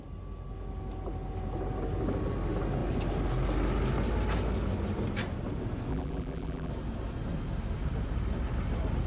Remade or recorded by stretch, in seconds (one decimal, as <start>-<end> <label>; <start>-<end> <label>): 0.0-5.9 recorded; 5.9-6.7 remade; 6.7-9.1 recorded